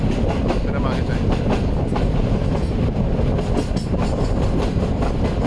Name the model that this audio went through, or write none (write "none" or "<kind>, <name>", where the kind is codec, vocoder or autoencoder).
none